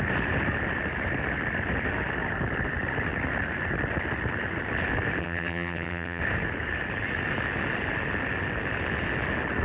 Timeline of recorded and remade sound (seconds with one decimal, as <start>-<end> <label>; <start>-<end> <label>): 0.0-5.2 recorded; 5.2-6.2 remade; 6.2-9.6 recorded